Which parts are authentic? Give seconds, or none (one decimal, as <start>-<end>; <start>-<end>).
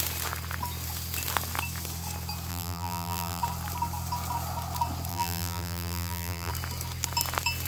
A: 0.0-2.5; 3.4-5.1; 6.5-7.7